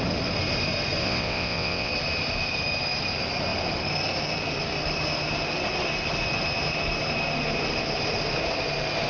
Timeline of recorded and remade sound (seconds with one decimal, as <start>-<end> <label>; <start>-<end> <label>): 0.0-1.0 recorded; 1.0-1.9 remade; 1.9-9.1 recorded

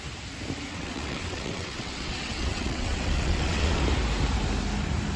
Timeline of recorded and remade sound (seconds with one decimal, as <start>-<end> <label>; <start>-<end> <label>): 0.0-0.7 recorded; 0.7-3.8 remade; 3.8-5.2 recorded